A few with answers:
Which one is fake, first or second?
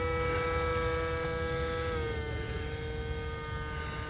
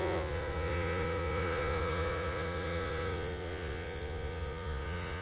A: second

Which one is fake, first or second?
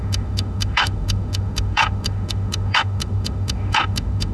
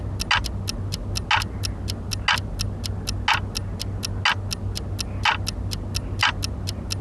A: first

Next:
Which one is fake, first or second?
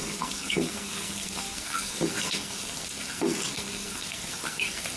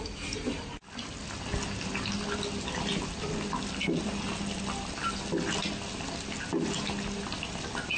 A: first